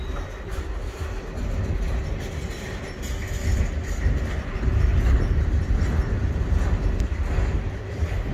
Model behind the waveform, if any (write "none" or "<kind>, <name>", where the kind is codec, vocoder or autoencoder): none